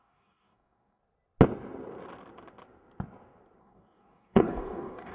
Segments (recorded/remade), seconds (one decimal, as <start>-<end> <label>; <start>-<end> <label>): 0.0-1.0 remade; 1.0-3.6 recorded; 3.6-5.1 remade